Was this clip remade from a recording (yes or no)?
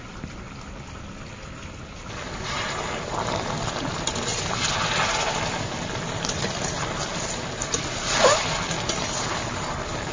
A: no